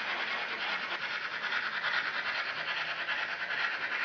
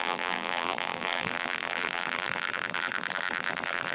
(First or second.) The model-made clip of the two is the second